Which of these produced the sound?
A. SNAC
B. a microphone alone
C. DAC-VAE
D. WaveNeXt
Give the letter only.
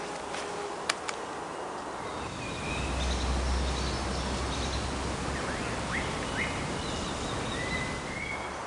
B